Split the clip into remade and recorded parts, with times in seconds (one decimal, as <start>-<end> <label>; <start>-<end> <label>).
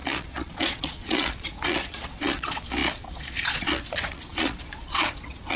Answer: 0.0-5.6 remade